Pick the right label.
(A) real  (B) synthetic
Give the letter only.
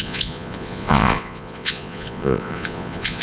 B